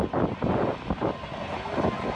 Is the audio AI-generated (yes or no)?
no